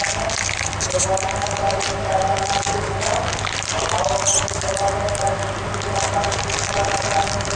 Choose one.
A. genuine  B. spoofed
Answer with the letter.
A